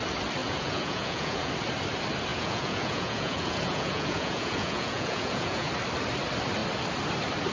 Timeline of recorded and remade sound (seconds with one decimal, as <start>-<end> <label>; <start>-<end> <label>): 0.0-0.4 recorded; 0.4-1.5 remade; 1.5-2.3 recorded; 2.3-5.7 remade; 5.7-7.5 recorded